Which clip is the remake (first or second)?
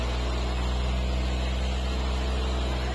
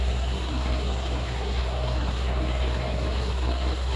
second